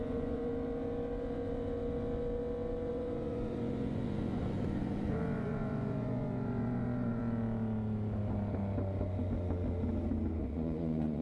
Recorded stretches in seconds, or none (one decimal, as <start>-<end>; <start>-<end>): 0.5-2.9; 7.2-10.4